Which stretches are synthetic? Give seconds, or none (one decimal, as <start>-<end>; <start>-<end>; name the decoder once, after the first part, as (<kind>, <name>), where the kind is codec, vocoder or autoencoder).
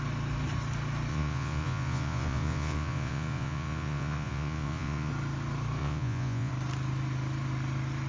1.1-5.1 (vocoder, Vocos); 5.8-6.5